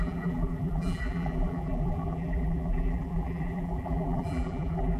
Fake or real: fake